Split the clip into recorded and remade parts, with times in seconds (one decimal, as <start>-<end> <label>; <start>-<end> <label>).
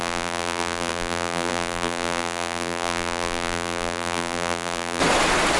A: 0.0-5.0 remade; 5.0-5.6 recorded